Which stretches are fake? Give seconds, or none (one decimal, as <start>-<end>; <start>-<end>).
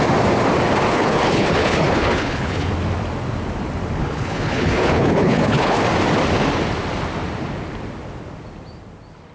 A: 0.9-2.7; 4.0-5.8